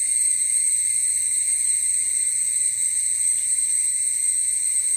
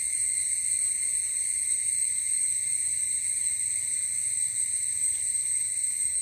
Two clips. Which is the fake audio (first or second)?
first